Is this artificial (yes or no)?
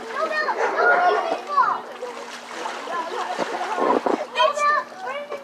no